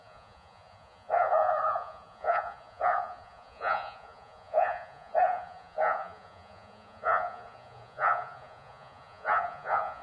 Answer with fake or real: fake